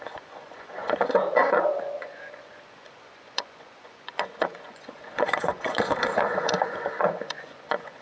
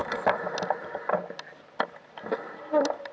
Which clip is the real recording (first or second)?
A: second